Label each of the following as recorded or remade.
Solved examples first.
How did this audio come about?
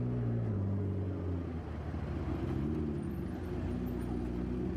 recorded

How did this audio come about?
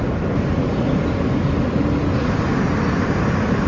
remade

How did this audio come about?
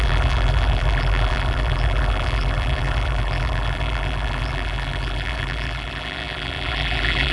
remade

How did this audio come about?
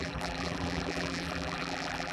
remade